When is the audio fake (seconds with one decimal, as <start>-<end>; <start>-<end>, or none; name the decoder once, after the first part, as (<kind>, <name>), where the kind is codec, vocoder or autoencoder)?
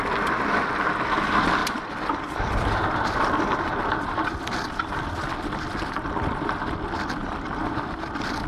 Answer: 1.6-4.7 (vocoder, BigVGAN v2)